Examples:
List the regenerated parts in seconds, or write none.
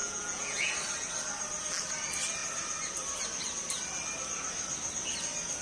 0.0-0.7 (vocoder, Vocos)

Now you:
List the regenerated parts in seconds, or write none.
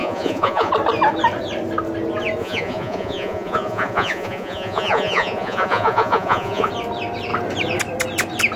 0.0-0.7 (vocoder, Vocos); 2.4-6.7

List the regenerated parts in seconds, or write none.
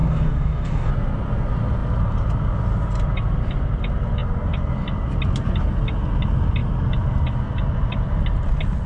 0.0-0.9 (codec, DAC)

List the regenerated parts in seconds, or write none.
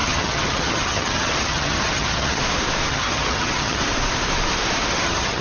0.0-2.4 (vocoder, HiFi-GAN); 2.9-3.8; 4.9-5.4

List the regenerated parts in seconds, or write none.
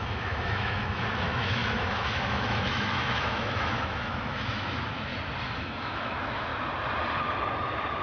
0.0-5.1 (autoencoder, DAC-VAE); 5.6-6.5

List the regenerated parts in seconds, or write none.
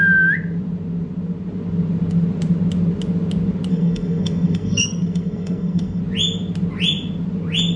3.7-6.0 (codec, SNAC)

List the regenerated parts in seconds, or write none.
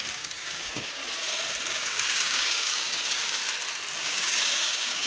0.0-1.0 (codec, DAC); 1.7-3.4; 4.0-5.1